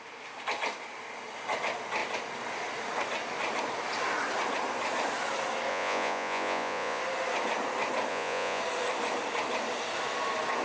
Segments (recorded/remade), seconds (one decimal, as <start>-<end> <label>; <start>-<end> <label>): 0.0-5.7 recorded; 5.7-7.0 remade; 7.0-8.1 recorded; 8.1-8.6 remade; 8.6-10.6 recorded